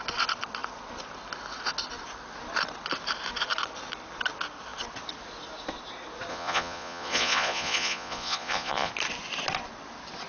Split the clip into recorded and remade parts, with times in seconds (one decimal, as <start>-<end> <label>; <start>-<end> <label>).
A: 0.0-6.3 recorded; 6.3-8.9 remade; 8.9-10.3 recorded

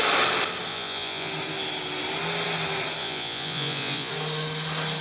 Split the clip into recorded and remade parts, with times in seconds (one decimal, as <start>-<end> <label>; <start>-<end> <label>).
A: 0.0-0.7 recorded; 0.7-1.3 remade; 1.3-3.0 recorded; 3.0-4.1 remade; 4.1-5.0 recorded

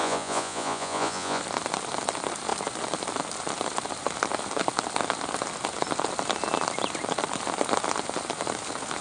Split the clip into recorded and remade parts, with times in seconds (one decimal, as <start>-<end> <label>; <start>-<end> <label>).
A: 0.0-1.4 remade; 1.4-9.0 recorded

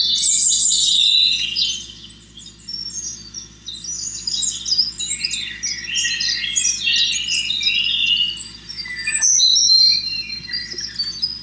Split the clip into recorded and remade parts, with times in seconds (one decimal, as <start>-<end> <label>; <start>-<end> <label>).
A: 0.0-11.4 recorded